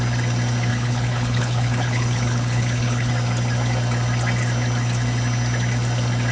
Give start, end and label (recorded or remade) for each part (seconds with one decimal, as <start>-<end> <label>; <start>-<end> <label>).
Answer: 0.0-0.7 recorded; 0.7-3.1 remade; 3.1-6.3 recorded